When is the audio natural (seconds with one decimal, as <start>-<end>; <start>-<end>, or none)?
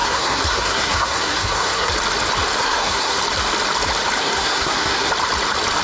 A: 1.9-2.6; 3.2-4.2; 5.1-5.8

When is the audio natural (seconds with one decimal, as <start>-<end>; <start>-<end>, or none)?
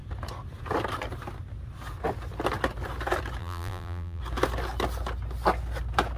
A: 0.0-3.4; 4.2-6.2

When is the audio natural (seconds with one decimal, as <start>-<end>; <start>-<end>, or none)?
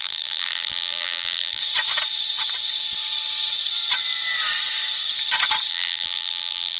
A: 1.6-5.7